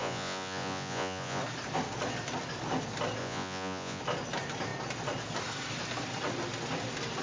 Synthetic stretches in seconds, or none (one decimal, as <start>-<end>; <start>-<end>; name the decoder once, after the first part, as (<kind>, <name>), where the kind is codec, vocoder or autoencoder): 0.0-1.4 (vocoder, Vocos); 3.2-4.0